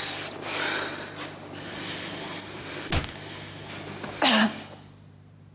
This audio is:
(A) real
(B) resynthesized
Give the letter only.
A